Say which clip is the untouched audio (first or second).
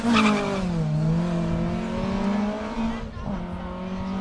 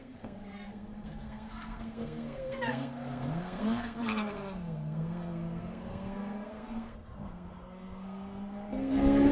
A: first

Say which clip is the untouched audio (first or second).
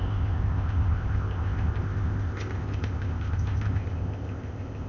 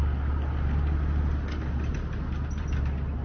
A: second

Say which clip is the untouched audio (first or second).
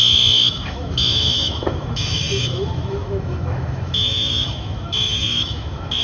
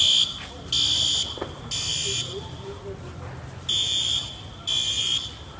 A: second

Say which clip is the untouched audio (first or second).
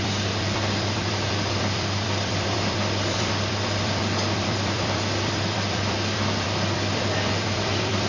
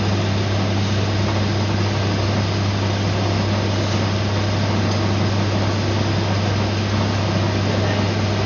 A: second